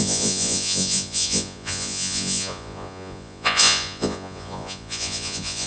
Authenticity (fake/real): fake